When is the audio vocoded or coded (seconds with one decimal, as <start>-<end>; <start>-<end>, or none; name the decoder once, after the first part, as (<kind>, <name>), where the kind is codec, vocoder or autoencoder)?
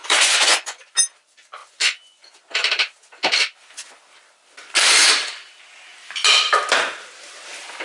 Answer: 0.0-0.9 (vocoder, Vocos); 1.6-2.4